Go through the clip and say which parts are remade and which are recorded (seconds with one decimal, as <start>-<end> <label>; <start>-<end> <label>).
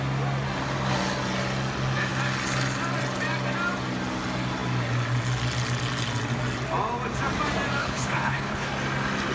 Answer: 0.0-7.8 recorded; 7.8-8.7 remade; 8.7-9.3 recorded